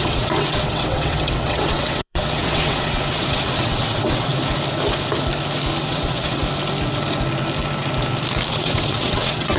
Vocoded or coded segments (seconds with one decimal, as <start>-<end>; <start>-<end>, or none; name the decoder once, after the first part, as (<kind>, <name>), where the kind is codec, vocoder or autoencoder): 0.0-4.3 (vocoder, WaveNeXt); 5.8-6.4; 8.5-9.6